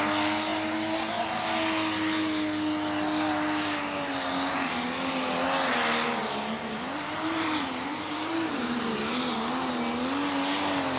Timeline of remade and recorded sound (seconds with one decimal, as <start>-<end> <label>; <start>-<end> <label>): 0.0-6.2 recorded; 6.2-9.0 remade; 9.0-11.0 recorded